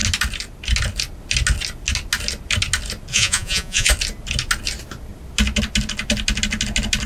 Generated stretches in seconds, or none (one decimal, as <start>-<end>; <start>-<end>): 3.1-3.9